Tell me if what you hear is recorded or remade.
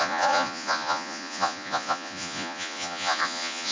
remade